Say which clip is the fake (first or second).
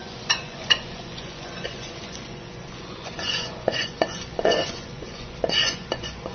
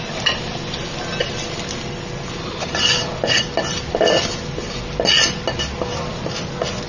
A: first